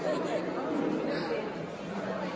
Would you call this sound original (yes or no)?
yes